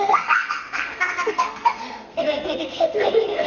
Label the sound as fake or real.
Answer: fake